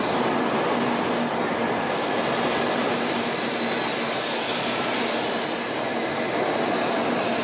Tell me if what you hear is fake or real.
real